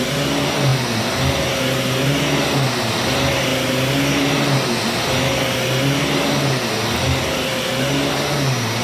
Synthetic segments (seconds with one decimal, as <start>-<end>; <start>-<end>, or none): none